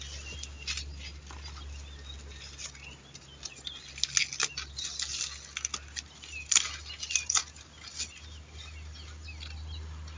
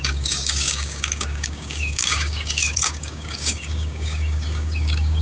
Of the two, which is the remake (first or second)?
second